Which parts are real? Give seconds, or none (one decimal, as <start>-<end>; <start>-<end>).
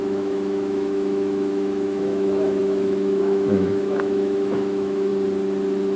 5.1-6.0